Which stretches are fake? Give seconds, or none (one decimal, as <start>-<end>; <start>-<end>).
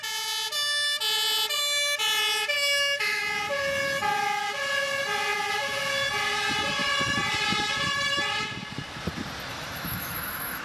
2.5-3.2; 9.5-10.6